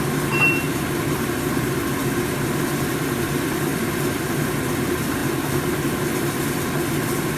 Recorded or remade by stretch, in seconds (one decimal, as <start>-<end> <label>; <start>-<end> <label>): 0.0-7.4 recorded